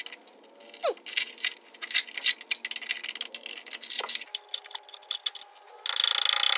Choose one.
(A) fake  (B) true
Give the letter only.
B